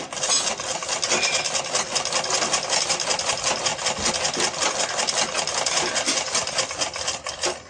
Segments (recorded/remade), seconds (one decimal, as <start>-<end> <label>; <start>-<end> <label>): 0.0-7.7 recorded